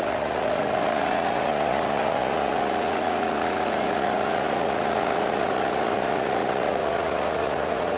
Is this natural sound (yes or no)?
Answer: no